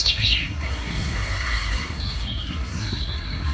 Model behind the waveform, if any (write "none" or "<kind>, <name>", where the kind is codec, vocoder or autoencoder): codec, SNAC